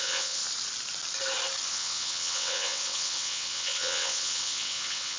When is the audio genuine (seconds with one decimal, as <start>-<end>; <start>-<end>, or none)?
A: 0.4-1.7